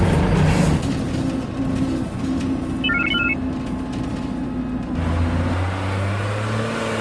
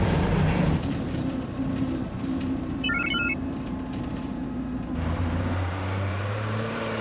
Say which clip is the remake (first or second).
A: second